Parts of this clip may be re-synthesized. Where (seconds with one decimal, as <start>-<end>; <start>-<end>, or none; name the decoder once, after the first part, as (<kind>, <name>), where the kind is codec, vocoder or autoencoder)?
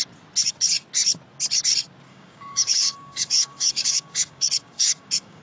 2.1-5.4 (codec, DAC)